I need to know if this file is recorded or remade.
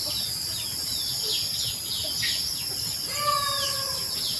recorded